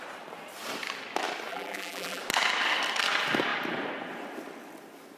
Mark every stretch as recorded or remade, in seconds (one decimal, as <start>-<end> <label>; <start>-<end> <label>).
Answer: 0.0-1.5 recorded; 1.5-2.2 remade; 2.2-5.2 recorded